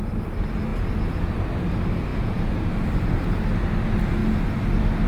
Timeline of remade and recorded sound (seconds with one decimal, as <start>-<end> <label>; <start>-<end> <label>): 0.0-0.7 recorded; 0.7-1.3 remade; 1.3-2.1 recorded; 2.1-2.7 remade; 2.7-5.1 recorded